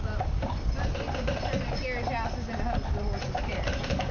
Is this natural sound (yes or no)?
yes